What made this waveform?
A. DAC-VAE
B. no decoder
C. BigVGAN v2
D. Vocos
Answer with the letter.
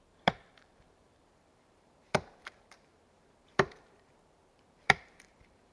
C